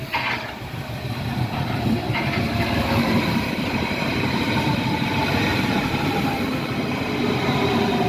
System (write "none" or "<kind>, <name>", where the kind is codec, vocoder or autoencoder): vocoder, BigVGAN v2